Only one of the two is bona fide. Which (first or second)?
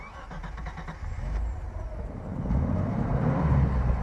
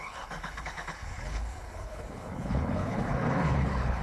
first